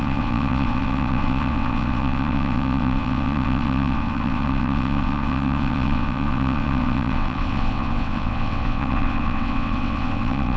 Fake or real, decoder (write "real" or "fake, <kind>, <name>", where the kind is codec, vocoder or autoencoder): fake, vocoder, WaveNeXt